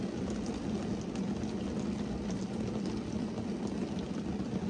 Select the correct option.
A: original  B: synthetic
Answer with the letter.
A